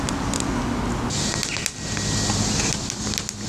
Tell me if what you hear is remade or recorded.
recorded